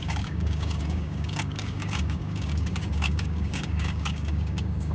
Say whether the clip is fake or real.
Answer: fake